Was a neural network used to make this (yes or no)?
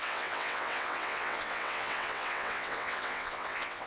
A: yes